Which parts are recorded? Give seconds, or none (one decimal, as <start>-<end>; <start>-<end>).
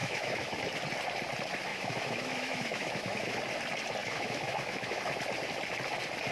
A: 0.6-1.7; 3.4-4.0; 5.0-6.3